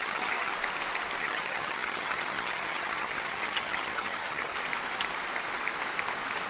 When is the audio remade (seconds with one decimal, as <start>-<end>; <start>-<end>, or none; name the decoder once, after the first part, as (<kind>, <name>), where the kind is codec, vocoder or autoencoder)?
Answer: 0.0-0.5 (vocoder, HiFi-GAN); 1.2-4.5